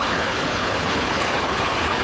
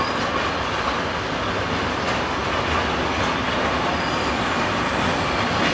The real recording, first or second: second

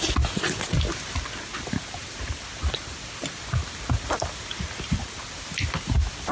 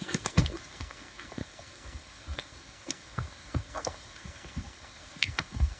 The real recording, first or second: first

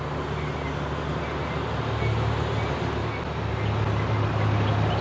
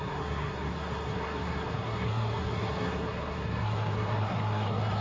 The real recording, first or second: first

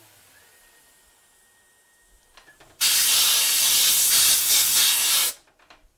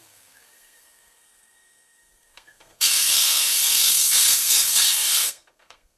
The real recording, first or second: first